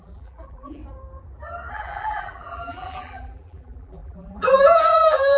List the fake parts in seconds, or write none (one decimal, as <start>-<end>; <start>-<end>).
0.0-0.8; 1.7-5.4